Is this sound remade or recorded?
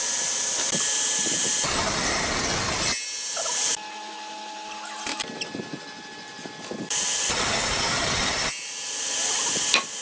recorded